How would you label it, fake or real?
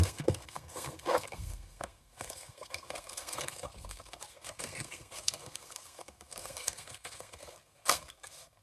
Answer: fake